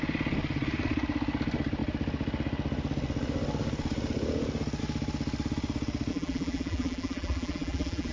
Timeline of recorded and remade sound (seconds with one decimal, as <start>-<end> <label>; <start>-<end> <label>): 0.0-6.1 recorded; 6.1-8.1 remade